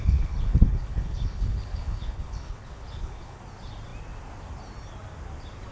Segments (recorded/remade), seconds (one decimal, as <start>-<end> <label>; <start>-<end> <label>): 0.0-3.4 remade; 3.4-5.7 recorded

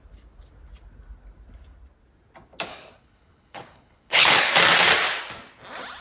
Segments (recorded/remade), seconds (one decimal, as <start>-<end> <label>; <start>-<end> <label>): 0.0-2.7 recorded; 2.7-4.5 remade; 4.5-6.0 recorded

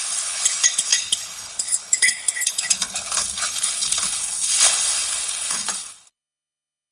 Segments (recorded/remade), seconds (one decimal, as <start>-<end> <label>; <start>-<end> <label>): 0.0-6.9 remade

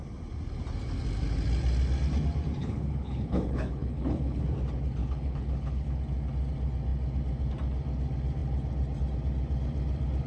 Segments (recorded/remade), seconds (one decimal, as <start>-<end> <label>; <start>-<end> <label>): 0.0-2.6 recorded; 2.6-4.4 remade; 4.4-5.0 recorded; 5.0-6.0 remade; 6.0-10.3 recorded

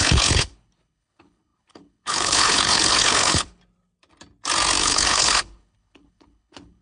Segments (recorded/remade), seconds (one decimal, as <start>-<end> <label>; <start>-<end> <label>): 0.0-3.6 remade; 3.6-4.8 recorded; 4.8-6.8 remade

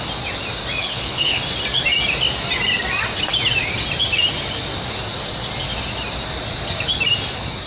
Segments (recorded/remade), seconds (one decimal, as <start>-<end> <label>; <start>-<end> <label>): 0.0-0.8 recorded; 0.8-1.4 remade; 1.4-7.7 recorded